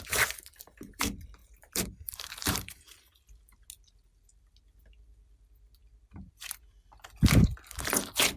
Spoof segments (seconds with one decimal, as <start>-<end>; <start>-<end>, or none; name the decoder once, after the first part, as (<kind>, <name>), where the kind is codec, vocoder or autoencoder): 1.4-3.2 (vocoder, BigVGAN v2)